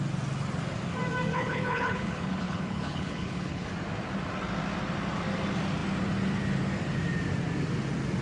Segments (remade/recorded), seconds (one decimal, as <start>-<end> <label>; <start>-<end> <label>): 0.0-1.3 recorded; 1.3-3.7 remade; 3.7-8.2 recorded